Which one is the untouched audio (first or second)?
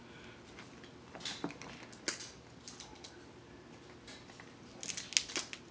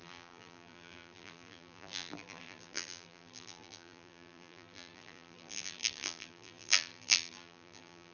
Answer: first